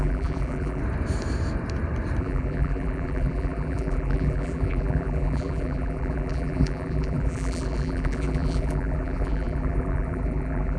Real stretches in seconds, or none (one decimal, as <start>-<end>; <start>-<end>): 0.8-2.2